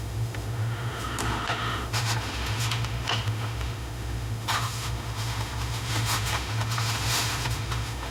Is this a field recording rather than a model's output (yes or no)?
no